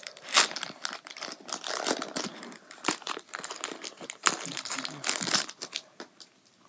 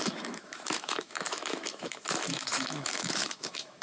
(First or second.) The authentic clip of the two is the first